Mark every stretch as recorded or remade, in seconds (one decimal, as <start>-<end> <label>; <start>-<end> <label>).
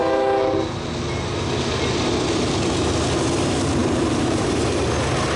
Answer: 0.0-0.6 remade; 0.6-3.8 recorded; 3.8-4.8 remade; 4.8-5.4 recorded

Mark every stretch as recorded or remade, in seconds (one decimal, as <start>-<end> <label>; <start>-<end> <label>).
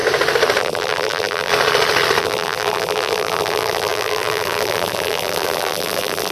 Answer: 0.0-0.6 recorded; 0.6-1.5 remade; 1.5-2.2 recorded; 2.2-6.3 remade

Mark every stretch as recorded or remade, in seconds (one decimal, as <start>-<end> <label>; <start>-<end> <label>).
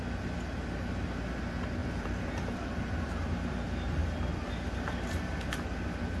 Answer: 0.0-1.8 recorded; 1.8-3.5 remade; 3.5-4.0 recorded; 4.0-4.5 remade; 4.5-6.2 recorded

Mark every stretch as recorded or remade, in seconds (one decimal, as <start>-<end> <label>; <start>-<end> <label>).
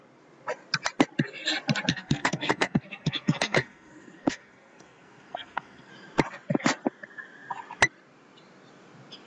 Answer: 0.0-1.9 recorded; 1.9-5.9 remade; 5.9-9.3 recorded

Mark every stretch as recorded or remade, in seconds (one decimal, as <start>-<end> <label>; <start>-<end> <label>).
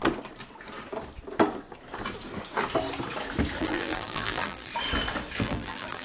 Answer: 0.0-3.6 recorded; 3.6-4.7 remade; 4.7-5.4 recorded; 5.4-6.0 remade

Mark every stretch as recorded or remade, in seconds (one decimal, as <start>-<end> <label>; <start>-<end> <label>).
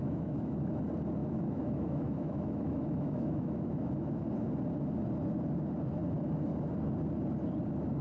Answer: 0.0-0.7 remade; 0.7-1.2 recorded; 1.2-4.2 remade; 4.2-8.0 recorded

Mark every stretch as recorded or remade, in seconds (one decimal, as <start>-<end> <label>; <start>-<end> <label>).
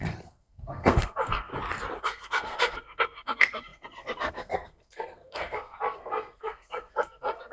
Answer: 0.0-1.5 remade; 1.5-2.0 recorded; 2.0-7.5 remade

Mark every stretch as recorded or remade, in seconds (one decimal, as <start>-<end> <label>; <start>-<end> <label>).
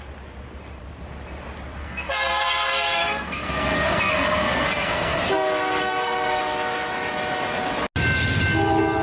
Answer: 0.0-1.8 recorded; 1.8-5.2 remade; 5.2-5.8 recorded; 5.8-6.4 remade; 6.4-9.0 recorded